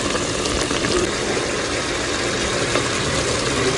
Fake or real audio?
fake